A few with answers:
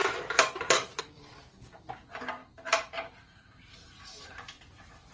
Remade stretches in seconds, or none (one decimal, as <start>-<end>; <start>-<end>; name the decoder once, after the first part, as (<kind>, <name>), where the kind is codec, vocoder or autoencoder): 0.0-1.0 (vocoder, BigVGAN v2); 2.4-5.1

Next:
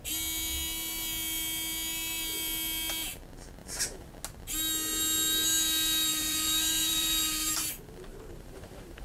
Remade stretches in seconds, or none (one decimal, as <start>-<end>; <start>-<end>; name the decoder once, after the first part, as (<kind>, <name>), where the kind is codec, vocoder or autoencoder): 3.6-4.1 (vocoder, BigVGAN v2); 6.1-7.7; 8.1-9.0

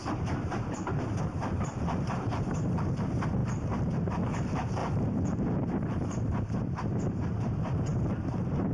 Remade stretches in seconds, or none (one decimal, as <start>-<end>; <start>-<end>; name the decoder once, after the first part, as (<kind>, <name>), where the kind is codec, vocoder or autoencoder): 0.0-8.7 (vocoder, BigVGAN v2)

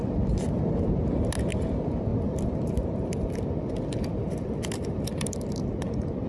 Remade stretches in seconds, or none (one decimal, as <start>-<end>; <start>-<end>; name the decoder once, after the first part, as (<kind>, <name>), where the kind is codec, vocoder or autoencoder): 2.1-6.3 (vocoder, BigVGAN v2)